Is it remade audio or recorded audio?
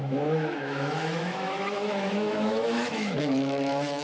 remade